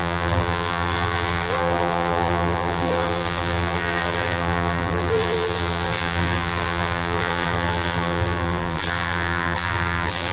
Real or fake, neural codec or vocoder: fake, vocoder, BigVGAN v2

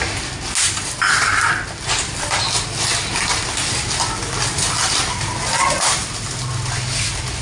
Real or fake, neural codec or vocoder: real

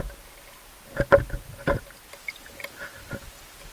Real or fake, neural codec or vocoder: real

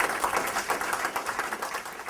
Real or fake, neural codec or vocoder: fake, vocoder, BigVGAN v2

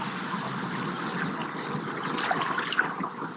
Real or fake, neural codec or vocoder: real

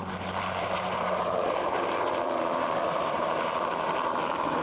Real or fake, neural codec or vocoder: fake, vocoder, BigVGAN v2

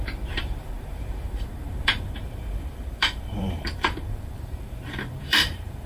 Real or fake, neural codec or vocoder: fake, vocoder, BigVGAN v2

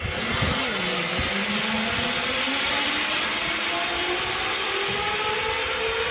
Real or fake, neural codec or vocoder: real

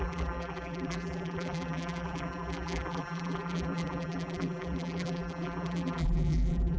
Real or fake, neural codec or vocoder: fake, vocoder, BigVGAN v2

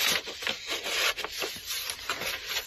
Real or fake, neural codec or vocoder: fake, vocoder, BigVGAN v2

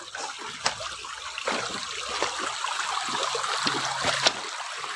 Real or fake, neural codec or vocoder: fake, vocoder, BigVGAN v2